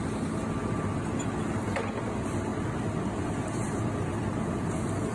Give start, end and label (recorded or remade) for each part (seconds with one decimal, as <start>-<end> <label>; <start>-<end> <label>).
0.0-2.5 recorded; 2.5-4.6 remade; 4.6-5.1 recorded